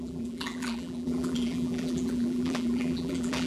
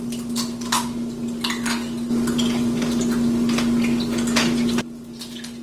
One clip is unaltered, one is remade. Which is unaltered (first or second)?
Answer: second